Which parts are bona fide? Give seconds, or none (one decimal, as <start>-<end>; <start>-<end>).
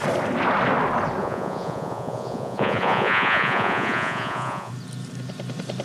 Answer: 0.0-1.2; 4.7-5.8